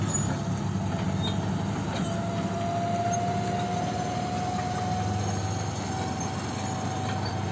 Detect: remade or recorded recorded